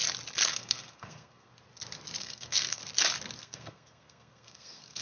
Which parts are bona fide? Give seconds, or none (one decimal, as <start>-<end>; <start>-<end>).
0.0-0.5; 1.5-2.2; 2.8-3.4